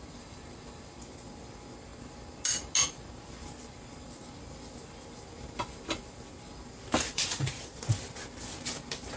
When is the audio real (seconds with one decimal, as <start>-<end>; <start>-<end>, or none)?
0.0-7.1; 7.9-9.2